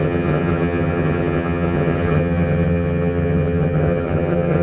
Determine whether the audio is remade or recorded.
remade